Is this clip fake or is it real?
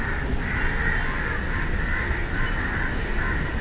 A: real